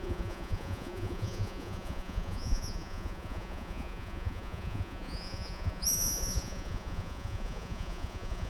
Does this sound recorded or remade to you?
remade